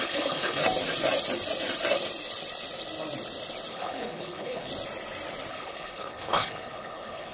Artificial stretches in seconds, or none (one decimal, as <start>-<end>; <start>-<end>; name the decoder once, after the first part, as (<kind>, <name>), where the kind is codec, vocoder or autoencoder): 0.0-0.6 (codec, HILCodec); 3.7-4.7; 5.5-7.3